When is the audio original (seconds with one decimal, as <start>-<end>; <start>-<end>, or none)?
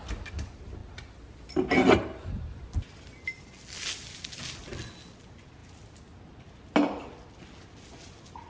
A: 0.0-8.5